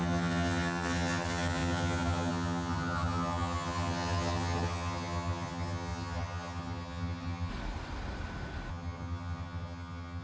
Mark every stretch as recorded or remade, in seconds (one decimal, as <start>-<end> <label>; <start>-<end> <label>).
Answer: 0.0-7.5 remade; 7.5-8.7 recorded; 8.7-10.2 remade